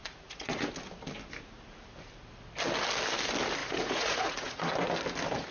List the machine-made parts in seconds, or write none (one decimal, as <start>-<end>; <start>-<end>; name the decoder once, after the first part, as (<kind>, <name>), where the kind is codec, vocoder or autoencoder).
0.0-0.7 (vocoder, Vocos); 3.6-4.7